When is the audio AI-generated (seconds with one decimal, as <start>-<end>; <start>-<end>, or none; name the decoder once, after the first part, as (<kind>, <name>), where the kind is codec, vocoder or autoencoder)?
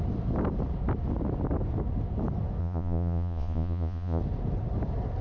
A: 2.6-4.2 (vocoder, Vocos)